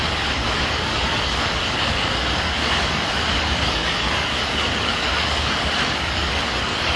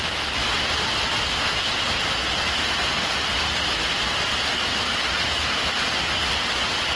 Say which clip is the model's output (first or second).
first